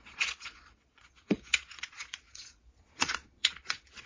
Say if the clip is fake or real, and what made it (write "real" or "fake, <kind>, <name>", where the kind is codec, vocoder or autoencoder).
fake, vocoder, Vocos